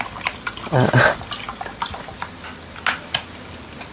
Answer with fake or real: real